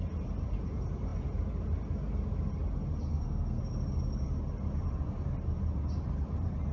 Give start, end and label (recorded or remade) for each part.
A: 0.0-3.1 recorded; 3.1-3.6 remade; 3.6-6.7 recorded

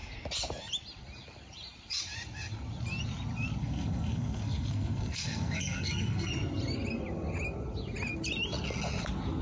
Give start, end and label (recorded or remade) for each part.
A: 0.0-3.6 recorded; 3.6-6.3 remade; 6.3-9.4 recorded

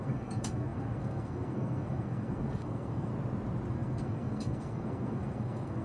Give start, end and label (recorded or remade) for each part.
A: 0.0-3.1 remade; 3.1-3.7 recorded; 3.7-5.8 remade